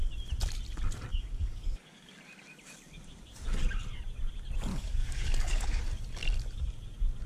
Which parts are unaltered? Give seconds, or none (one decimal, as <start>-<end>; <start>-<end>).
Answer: 0.0-1.1; 2.1-4.7; 5.8-7.3